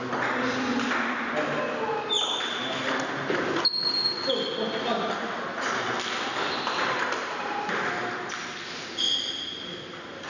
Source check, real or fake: real